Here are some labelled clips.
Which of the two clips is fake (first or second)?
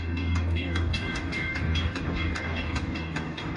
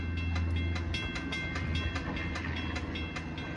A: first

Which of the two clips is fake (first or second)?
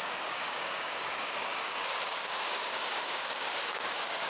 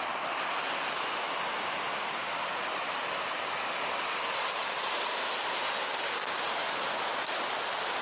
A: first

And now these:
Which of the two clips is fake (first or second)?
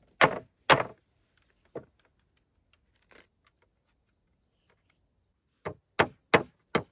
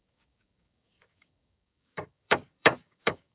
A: second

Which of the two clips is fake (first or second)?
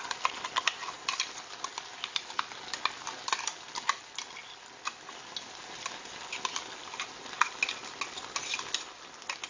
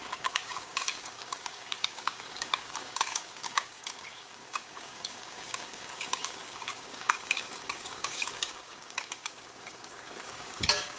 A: second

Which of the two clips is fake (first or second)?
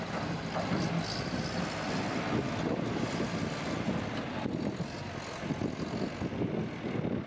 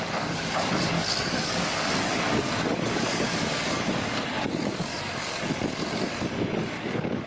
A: second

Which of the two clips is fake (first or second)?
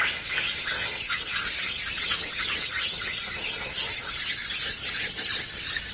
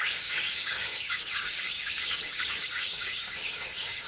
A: second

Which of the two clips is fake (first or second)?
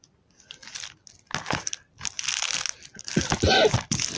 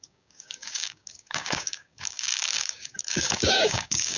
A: second